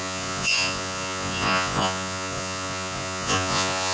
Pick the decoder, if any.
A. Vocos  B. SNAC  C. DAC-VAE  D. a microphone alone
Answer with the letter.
A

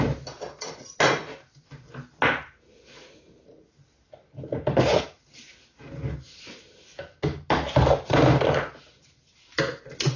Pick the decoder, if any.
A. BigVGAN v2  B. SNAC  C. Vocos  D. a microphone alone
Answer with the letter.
D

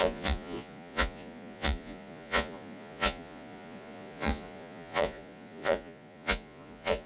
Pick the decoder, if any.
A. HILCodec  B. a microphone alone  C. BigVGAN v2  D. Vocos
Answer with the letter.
D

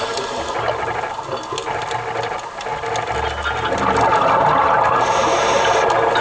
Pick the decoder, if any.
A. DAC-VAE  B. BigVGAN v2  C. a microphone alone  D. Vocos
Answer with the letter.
C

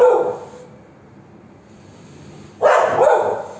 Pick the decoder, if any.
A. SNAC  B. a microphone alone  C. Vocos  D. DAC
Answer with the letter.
B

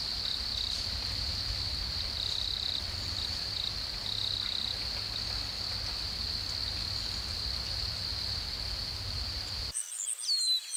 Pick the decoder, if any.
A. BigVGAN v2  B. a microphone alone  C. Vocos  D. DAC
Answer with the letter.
B